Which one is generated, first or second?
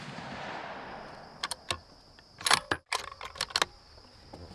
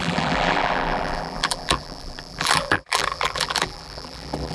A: second